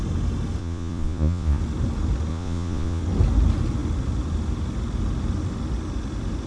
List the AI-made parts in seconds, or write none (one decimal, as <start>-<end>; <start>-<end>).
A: 0.6-1.6; 2.3-3.0